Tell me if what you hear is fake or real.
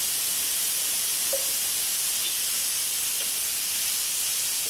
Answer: fake